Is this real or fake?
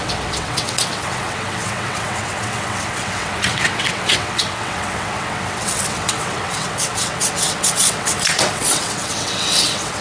fake